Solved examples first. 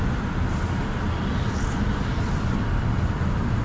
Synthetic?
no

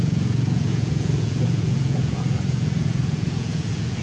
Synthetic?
yes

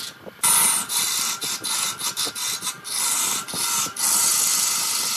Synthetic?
no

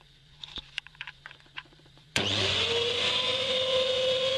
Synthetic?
yes